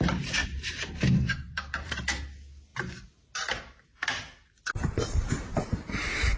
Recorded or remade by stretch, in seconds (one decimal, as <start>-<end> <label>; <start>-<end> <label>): 0.0-0.4 recorded; 0.4-2.2 remade; 2.2-4.8 recorded; 4.8-6.4 remade